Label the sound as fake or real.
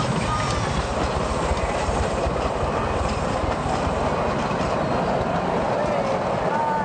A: real